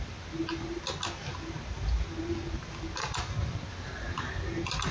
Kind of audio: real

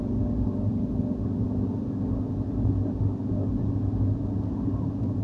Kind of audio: real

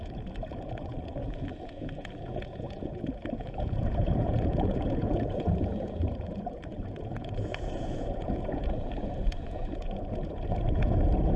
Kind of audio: fake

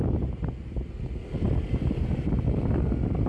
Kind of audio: real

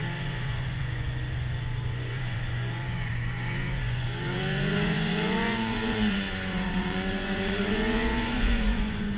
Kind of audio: fake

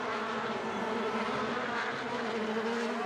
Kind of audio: real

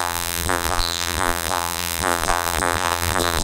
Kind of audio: fake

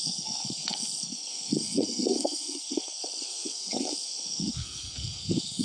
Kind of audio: fake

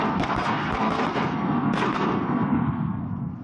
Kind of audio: fake